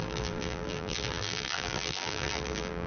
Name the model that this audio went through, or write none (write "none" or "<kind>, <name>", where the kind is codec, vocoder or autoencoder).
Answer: vocoder, BigVGAN v2